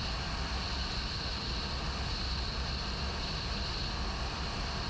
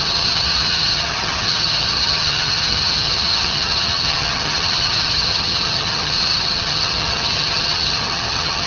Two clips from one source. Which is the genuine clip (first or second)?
first